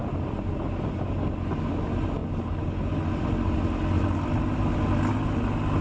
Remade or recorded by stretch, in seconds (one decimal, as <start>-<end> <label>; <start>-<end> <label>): 0.0-5.8 recorded